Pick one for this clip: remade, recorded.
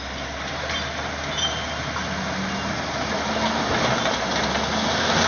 recorded